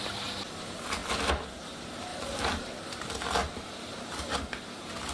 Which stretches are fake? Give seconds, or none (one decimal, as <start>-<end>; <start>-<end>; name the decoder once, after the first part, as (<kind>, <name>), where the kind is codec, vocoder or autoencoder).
2.1-2.9 (vocoder, BigVGAN v2); 3.4-3.9